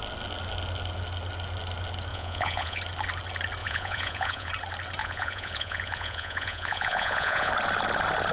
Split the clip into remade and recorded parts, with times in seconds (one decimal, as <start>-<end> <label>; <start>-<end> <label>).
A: 0.0-2.1 recorded; 2.1-2.8 remade; 2.8-3.6 recorded; 3.6-4.5 remade; 4.5-5.0 recorded; 5.0-7.5 remade; 7.5-8.3 recorded

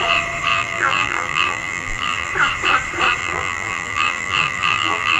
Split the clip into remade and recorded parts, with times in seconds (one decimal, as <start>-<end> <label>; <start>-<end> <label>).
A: 0.0-0.5 recorded; 0.5-2.3 remade; 2.3-3.2 recorded; 3.2-5.2 remade

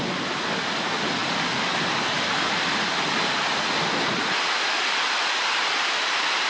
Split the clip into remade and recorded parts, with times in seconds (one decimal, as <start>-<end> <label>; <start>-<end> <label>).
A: 0.0-6.5 recorded

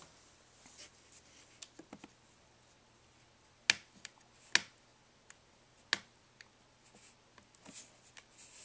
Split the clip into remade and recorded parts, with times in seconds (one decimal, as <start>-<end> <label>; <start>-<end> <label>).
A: 0.0-8.6 recorded